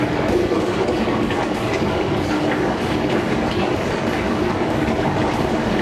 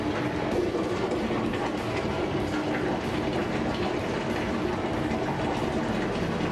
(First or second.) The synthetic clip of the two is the first